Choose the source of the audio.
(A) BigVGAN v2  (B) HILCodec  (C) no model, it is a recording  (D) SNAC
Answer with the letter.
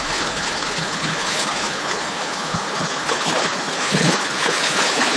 B